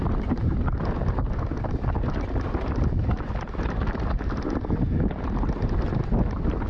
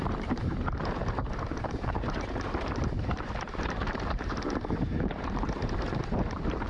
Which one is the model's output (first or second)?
second